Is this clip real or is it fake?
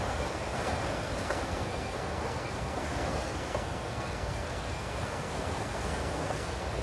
fake